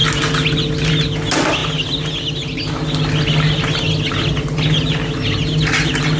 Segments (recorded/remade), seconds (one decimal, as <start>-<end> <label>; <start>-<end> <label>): 0.0-6.2 recorded